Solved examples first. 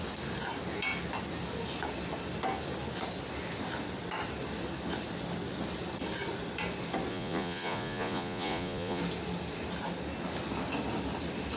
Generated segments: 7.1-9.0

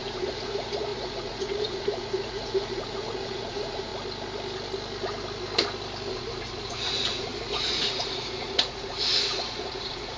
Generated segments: 0.0-3.9; 6.1-10.2

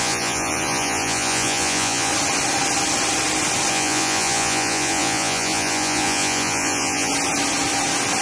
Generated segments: 0.0-2.1; 3.7-7.1

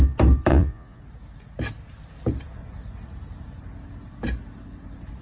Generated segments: 0.5-1.0

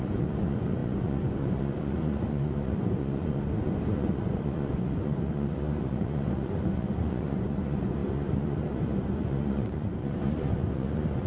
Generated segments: 0.0-11.3

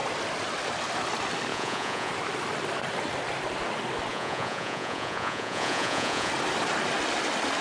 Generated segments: 1.5-2.1; 4.1-6.3

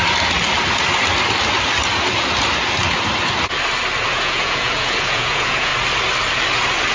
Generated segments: 4.1-5.7